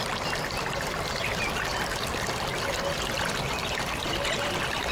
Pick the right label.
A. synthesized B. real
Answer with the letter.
B